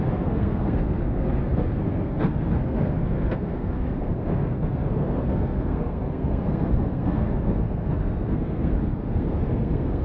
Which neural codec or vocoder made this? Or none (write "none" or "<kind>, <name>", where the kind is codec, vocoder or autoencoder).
codec, SNAC